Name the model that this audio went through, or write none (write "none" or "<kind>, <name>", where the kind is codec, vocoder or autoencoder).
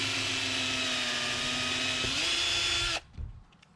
none